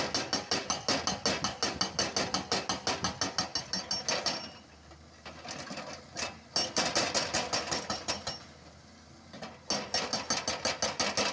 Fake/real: real